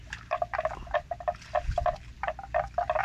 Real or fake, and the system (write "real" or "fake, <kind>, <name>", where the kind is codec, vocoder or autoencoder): real